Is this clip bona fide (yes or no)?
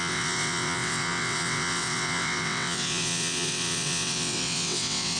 no